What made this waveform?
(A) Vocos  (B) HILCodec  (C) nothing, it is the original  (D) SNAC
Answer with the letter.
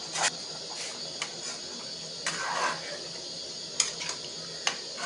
C